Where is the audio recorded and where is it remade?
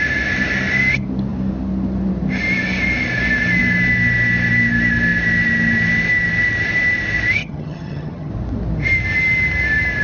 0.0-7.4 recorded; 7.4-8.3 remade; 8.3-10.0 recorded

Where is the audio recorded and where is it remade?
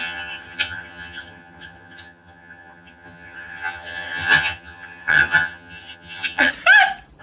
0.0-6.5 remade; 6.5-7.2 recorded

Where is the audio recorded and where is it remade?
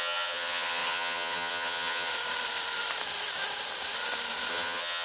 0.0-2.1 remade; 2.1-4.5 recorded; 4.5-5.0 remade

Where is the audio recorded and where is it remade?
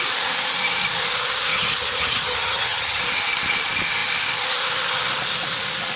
0.0-1.5 recorded; 1.5-3.0 remade; 3.0-6.0 recorded